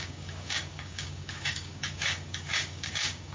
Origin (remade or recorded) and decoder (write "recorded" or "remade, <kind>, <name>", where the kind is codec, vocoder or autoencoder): remade, codec, DAC